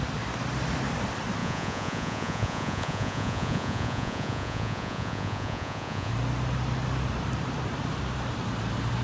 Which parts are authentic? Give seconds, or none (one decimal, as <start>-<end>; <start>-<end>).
0.0-1.4; 6.1-9.0